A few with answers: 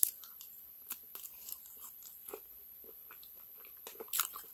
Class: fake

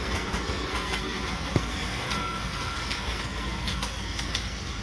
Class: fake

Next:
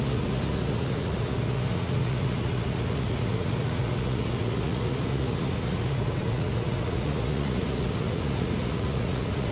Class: fake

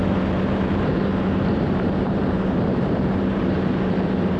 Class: fake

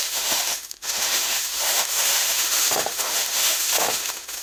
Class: fake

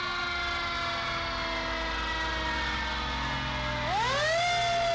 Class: real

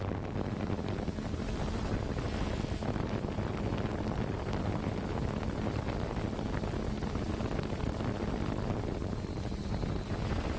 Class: real